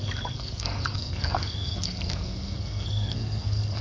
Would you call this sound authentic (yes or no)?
no